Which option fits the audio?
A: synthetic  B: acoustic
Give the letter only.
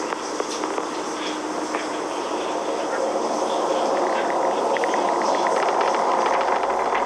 B